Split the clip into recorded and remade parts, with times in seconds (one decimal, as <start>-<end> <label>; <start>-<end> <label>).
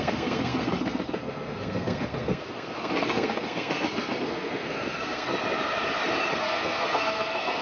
0.0-5.3 remade; 5.3-6.4 recorded; 6.4-7.6 remade